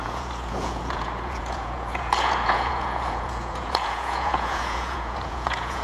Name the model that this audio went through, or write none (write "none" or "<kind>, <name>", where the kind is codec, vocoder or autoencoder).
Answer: vocoder, Vocos